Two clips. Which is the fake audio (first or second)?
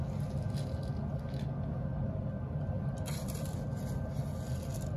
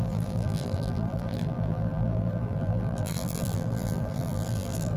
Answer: second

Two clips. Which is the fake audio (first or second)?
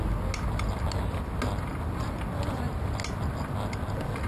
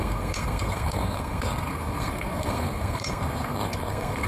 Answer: second